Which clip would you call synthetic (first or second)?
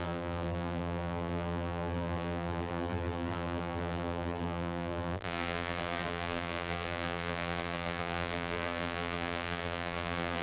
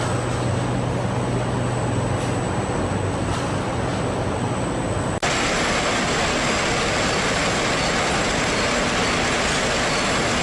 first